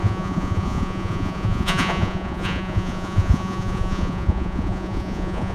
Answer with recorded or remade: remade